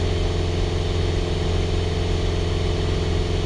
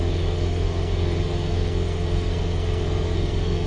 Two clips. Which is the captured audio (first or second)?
first